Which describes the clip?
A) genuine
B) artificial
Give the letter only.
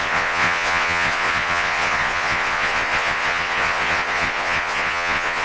B